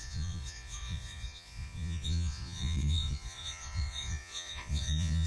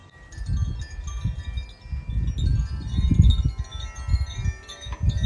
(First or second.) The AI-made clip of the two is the first